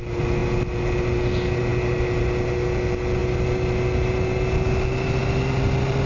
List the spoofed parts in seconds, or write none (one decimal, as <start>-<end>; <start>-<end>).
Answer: none